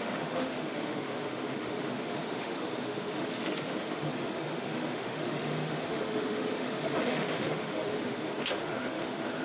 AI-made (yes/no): yes